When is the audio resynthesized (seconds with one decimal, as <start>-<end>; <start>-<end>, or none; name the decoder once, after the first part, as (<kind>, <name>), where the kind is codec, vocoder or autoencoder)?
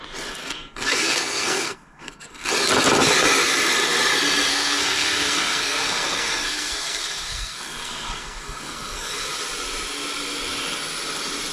0.4-2.5 (codec, SNAC); 4.5-9.3